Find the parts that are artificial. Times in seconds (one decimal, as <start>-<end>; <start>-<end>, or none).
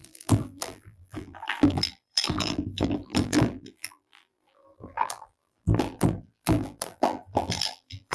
0.0-8.1